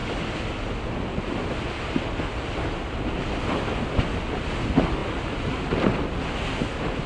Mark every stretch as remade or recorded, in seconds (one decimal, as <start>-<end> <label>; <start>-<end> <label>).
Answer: 0.0-7.1 recorded